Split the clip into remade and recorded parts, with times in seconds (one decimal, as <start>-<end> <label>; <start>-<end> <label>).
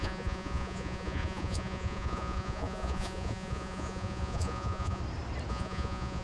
0.0-5.0 remade; 5.0-5.5 recorded; 5.5-6.2 remade